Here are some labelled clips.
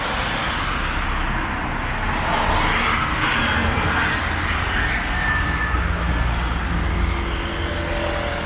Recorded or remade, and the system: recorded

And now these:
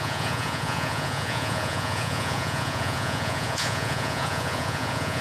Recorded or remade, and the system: remade, vocoder, Vocos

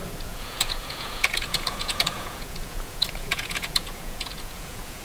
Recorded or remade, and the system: remade, vocoder, Vocos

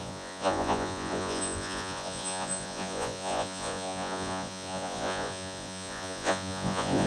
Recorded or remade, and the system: remade, vocoder, Vocos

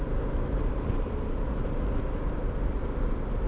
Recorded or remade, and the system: recorded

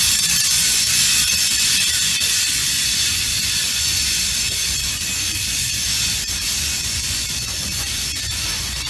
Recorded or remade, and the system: remade, vocoder, Vocos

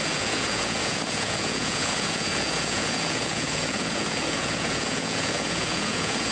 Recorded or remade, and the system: remade, vocoder, Vocos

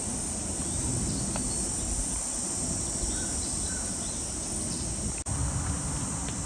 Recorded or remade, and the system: recorded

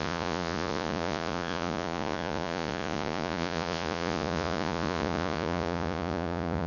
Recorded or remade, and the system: remade, vocoder, Vocos